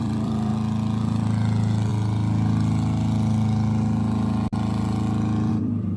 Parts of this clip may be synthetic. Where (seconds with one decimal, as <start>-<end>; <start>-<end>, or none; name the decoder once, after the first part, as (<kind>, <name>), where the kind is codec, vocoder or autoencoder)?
0.0-0.5 (vocoder, BigVGAN v2); 1.0-6.0